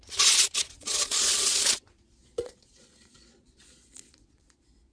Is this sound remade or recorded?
remade